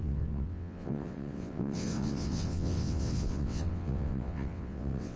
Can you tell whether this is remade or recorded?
remade